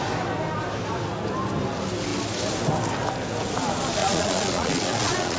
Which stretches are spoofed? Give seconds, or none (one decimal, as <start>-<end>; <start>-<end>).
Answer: 4.0-5.4

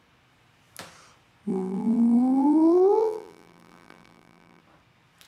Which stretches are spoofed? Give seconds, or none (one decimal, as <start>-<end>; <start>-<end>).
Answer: 1.5-4.6

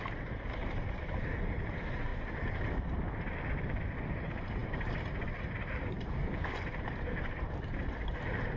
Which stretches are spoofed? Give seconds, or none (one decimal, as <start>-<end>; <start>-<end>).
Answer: 0.0-8.6

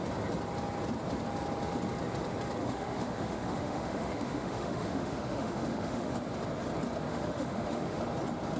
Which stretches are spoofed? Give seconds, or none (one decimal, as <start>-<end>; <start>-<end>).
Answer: 2.6-6.1; 7.1-8.0

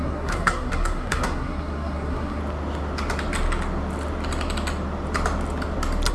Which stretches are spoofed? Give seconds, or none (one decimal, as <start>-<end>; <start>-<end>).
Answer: 0.0-2.4